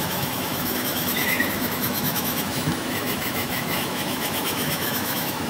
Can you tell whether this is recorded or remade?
remade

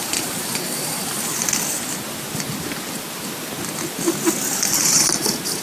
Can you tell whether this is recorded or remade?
recorded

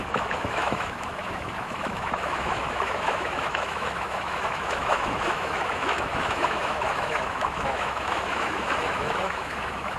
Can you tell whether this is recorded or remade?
remade